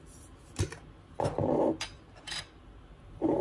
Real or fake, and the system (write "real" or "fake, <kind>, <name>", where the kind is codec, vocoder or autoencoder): real